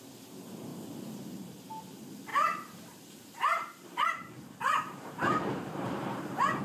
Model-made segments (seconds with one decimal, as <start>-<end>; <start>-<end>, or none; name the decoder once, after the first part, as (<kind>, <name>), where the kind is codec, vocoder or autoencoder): 0.7-1.6 (vocoder, BigVGAN v2); 2.3-6.6